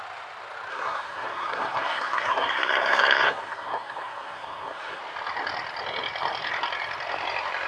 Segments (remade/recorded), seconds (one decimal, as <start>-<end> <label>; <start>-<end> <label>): 0.0-0.7 recorded; 0.7-5.0 remade; 5.0-7.7 recorded